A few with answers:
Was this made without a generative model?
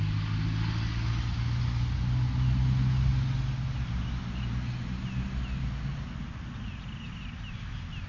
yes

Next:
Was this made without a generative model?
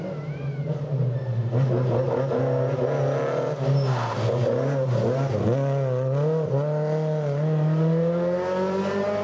yes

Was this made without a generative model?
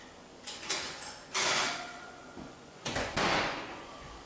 no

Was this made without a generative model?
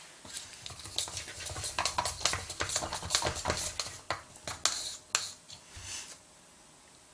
yes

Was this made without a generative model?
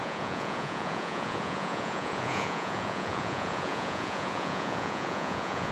no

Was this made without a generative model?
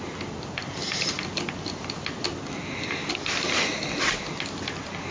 yes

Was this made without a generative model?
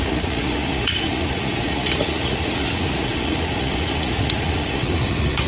no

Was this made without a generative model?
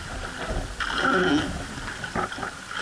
yes